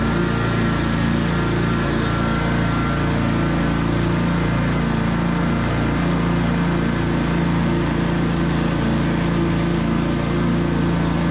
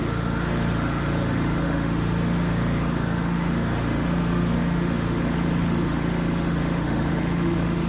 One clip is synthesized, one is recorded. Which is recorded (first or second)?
first